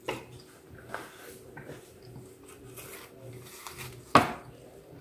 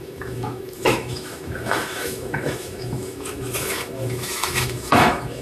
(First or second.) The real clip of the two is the first